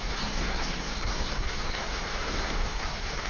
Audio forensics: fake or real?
fake